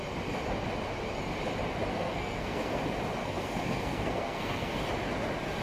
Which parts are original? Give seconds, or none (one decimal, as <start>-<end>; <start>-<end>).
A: 0.0-1.9; 2.8-3.2; 4.8-5.6